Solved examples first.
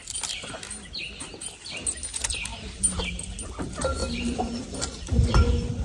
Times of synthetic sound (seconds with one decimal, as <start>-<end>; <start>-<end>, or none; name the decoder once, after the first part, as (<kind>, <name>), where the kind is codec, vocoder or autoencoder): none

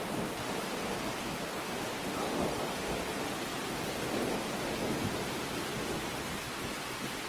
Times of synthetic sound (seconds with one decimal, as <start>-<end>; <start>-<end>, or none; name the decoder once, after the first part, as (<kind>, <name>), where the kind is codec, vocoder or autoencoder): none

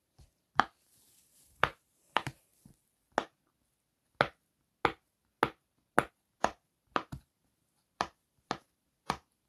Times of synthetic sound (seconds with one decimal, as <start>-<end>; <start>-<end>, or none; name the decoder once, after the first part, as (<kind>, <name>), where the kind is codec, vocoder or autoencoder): 0.0-2.5 (vocoder, BigVGAN v2); 6.1-9.5